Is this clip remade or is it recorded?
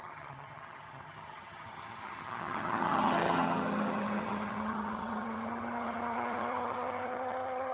remade